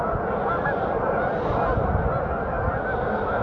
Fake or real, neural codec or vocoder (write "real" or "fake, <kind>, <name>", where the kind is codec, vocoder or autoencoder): real